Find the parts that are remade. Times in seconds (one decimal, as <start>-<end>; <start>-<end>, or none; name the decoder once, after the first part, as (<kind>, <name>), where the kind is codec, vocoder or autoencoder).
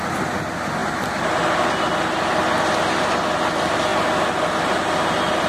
none